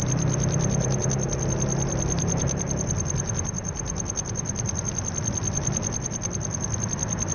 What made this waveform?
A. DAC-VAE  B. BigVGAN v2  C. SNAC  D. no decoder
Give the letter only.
D